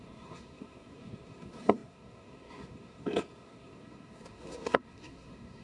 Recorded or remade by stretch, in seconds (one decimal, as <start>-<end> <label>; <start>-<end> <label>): 0.0-5.6 remade